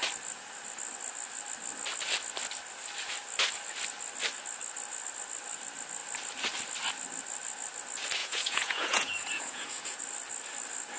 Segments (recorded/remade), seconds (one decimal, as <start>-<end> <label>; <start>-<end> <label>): 0.0-8.2 recorded; 8.2-10.0 remade; 10.0-11.0 recorded